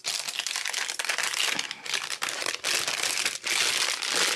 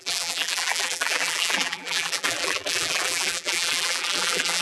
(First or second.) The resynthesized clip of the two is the second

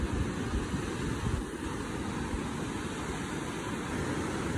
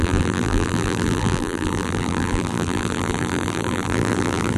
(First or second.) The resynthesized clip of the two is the second